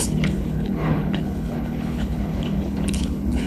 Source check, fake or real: fake